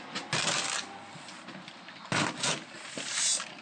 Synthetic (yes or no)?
no